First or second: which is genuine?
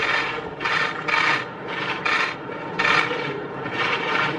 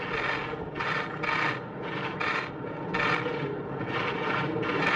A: second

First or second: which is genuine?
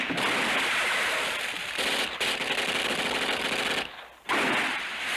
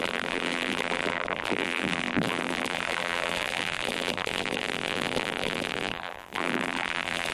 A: first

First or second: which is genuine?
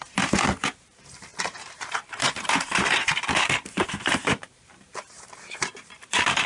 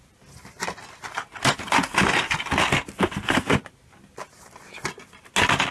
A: second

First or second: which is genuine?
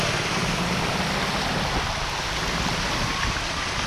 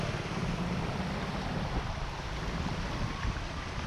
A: first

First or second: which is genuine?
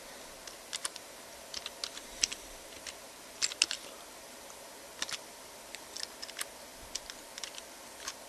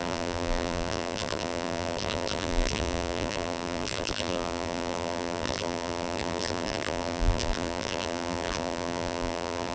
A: first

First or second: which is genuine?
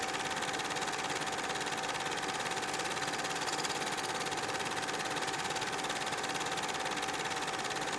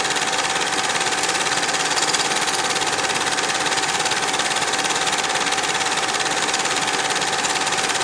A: first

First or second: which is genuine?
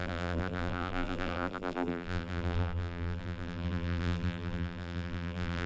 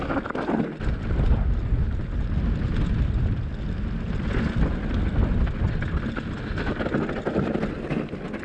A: second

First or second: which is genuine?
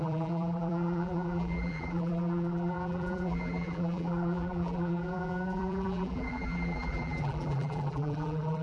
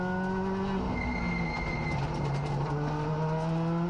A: second